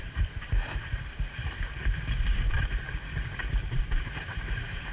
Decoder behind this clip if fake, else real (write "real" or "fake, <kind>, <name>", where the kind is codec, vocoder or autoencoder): fake, vocoder, BigVGAN v2